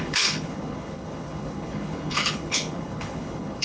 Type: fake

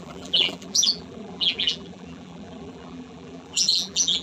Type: fake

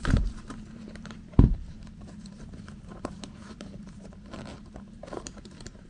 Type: fake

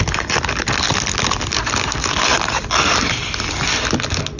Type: real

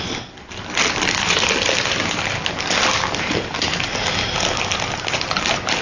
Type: real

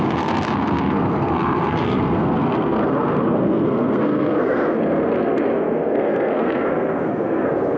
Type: fake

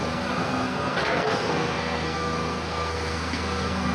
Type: fake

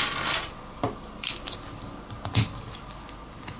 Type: real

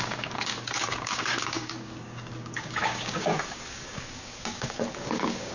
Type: fake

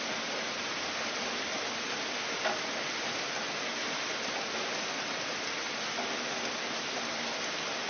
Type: real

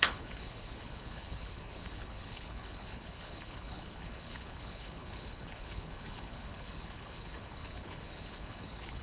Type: fake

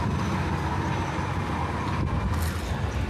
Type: real